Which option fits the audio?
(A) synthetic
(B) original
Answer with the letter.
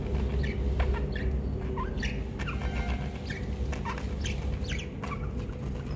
B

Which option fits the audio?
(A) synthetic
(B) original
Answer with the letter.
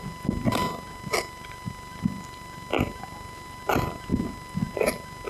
B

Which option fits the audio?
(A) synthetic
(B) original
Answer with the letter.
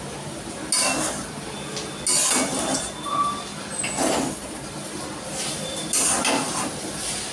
B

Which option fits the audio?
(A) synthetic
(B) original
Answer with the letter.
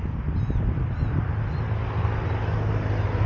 B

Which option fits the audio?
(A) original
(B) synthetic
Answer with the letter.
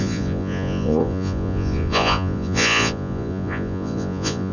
B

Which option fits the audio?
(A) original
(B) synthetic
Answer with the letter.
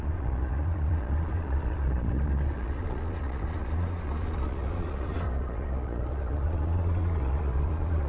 B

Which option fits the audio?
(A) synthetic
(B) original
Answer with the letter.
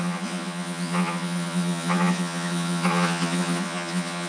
A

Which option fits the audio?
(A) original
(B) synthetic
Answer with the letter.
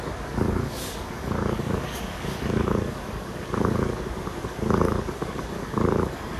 B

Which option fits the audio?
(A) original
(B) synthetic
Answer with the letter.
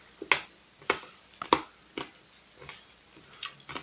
A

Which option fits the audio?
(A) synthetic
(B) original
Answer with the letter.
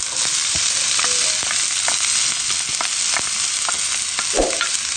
B